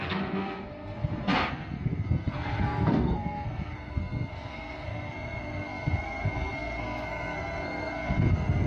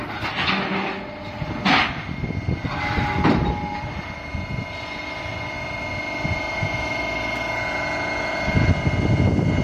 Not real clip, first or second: first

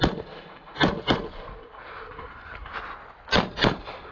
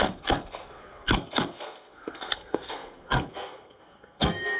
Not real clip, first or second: second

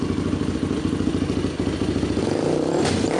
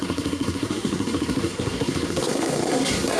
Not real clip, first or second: second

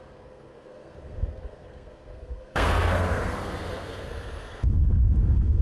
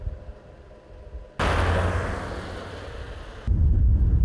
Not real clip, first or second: first